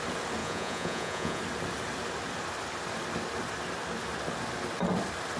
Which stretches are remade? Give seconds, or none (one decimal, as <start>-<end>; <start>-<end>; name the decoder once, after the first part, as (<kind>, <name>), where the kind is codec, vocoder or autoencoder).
0.4-1.4 (vocoder, Vocos)